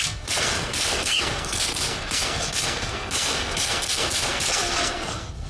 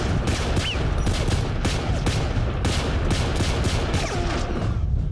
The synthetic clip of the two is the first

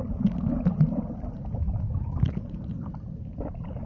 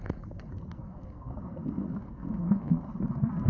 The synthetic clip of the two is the second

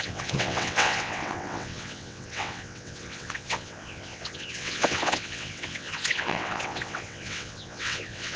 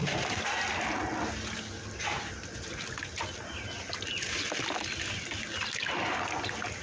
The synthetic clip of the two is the first